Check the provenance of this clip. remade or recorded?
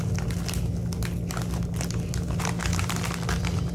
recorded